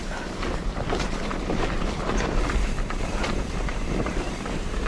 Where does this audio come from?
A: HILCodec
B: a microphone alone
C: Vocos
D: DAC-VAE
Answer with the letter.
B